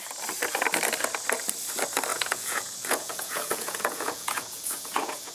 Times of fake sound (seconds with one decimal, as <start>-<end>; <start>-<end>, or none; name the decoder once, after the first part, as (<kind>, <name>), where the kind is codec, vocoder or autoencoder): 2.1-5.3 (vocoder, Vocos)